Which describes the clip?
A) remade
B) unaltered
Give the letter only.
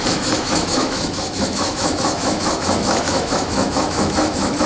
A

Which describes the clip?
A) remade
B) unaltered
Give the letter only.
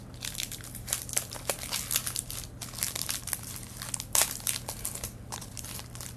B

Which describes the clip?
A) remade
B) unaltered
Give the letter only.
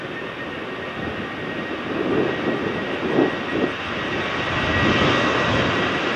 B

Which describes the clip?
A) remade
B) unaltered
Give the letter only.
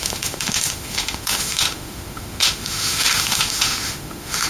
A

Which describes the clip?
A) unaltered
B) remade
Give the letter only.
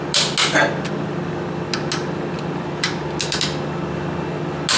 A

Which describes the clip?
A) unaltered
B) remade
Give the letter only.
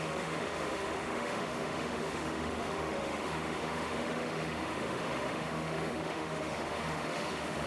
B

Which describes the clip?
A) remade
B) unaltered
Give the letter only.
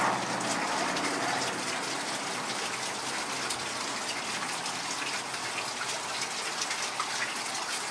B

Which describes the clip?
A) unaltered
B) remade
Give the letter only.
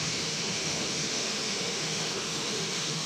B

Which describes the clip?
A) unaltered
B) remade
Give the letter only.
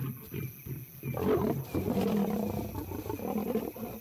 A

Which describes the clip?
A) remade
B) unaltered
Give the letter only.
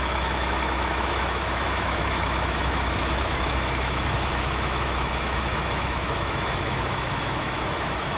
A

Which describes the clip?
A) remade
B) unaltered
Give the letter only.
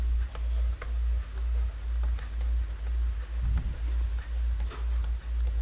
B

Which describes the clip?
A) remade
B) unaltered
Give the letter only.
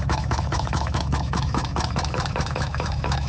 A